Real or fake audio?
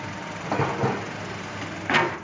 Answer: real